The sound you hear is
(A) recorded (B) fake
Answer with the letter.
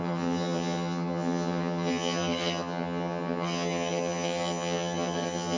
B